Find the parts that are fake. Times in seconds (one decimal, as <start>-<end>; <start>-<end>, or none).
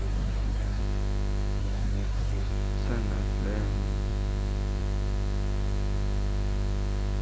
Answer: 0.0-0.8; 1.6-2.5